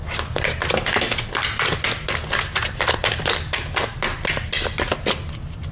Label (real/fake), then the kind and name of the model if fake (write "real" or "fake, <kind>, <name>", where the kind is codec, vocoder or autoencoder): real